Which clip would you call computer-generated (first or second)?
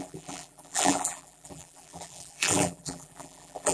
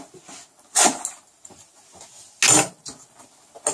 first